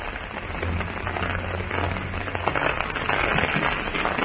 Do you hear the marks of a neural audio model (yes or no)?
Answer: no